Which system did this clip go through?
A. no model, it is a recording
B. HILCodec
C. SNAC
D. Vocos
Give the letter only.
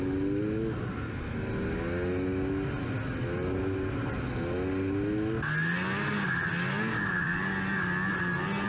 A